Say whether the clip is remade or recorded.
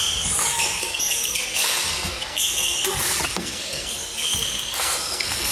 remade